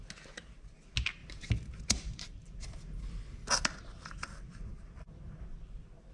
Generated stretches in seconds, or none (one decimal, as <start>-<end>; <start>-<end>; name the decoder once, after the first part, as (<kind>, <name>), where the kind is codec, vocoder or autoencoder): 1.2-3.5 (vocoder, BigVGAN v2)